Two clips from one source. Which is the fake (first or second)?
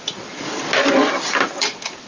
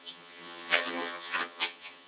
second